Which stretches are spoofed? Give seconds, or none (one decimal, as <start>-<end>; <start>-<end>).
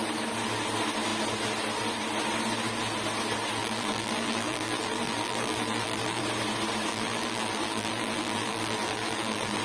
3.6-6.2; 6.9-9.6